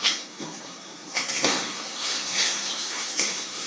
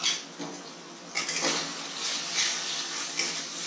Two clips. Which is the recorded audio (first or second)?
second